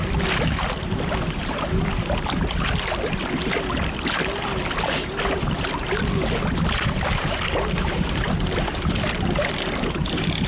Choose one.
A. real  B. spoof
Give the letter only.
A